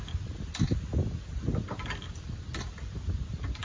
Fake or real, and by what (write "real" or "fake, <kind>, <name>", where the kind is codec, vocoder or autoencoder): real